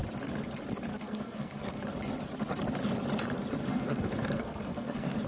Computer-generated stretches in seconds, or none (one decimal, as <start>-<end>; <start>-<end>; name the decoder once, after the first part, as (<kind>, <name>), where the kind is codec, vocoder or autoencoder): 0.9-1.8 (codec, SNAC); 3.7-5.3